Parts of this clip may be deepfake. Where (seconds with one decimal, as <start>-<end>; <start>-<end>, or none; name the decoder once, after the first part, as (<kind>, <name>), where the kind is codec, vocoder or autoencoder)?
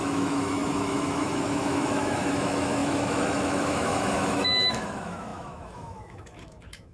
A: 0.0-6.9 (autoencoder, DAC-VAE)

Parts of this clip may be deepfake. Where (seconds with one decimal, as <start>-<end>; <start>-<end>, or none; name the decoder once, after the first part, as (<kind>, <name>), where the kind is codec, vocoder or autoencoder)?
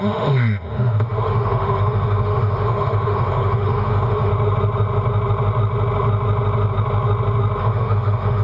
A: 0.0-4.3 (autoencoder, DAC-VAE); 7.6-8.4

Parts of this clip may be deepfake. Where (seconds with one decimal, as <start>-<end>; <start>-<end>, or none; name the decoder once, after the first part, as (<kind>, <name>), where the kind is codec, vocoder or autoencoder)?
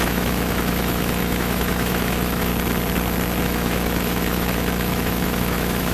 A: 0.0-2.5 (autoencoder, DAC-VAE); 3.4-5.9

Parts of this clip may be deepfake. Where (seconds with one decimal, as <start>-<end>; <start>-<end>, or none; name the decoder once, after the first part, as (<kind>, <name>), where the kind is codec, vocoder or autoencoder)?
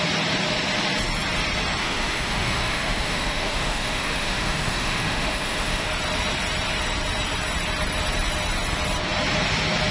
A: 1.8-5.9 (autoencoder, DAC-VAE)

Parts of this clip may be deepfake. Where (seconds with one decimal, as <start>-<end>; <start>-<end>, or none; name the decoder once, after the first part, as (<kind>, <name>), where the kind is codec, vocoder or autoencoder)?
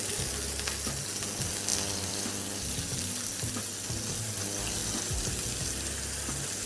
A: none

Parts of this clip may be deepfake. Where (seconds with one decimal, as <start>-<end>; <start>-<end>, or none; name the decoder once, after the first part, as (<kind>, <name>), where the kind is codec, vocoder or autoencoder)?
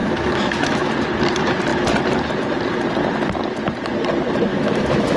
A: 0.0-0.9 (autoencoder, DAC-VAE); 4.5-5.2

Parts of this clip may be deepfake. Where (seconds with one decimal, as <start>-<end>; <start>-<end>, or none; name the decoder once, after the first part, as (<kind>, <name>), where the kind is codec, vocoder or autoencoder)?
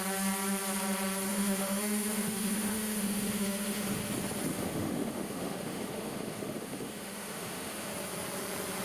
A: 1.3-4.0 (autoencoder, DAC-VAE); 4.5-7.9